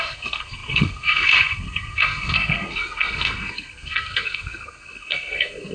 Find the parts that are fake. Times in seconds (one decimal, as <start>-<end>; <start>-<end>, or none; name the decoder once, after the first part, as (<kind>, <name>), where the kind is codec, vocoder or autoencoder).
0.0-5.7 (codec, SNAC)